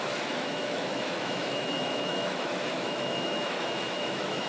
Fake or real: fake